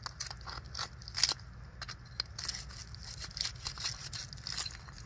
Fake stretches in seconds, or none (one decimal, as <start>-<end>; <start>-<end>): none